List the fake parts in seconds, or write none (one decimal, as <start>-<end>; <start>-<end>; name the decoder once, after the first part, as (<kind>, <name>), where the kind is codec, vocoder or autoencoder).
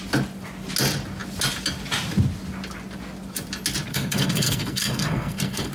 3.9-5.7 (codec, SNAC)